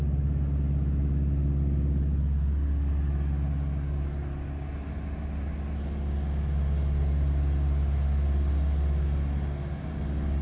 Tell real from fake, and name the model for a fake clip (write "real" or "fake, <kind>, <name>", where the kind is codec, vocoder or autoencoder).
real